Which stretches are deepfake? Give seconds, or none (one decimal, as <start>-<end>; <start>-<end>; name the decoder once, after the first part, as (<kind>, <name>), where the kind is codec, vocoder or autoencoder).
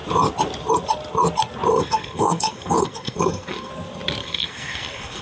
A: 1.7-3.7 (codec, SNAC); 4.2-5.2